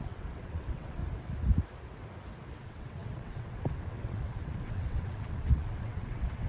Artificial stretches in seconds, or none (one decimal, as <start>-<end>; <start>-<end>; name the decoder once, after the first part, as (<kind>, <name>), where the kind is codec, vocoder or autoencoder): 0.0-1.0 (vocoder, WaveNeXt); 2.5-6.5